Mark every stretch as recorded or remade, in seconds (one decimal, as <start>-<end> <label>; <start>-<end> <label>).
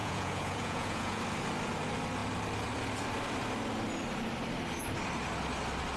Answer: 0.0-1.2 remade; 1.2-6.0 recorded